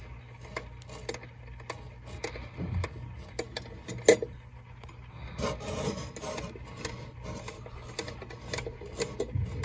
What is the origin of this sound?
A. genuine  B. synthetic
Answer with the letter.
A